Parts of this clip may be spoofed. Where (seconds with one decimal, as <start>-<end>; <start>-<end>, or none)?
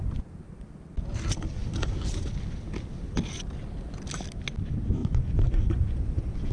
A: 5.0-6.5